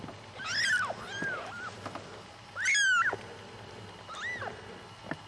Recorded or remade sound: recorded